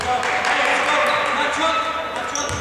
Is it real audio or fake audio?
real